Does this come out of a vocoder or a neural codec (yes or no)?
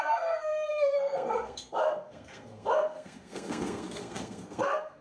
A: yes